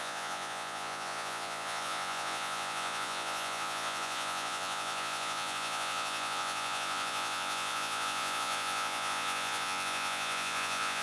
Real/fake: fake